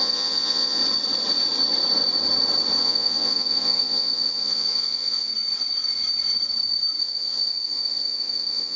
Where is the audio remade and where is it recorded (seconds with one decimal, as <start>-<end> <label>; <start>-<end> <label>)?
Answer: 0.0-0.8 remade; 0.8-2.8 recorded; 2.8-5.3 remade; 5.3-7.0 recorded; 7.0-8.8 remade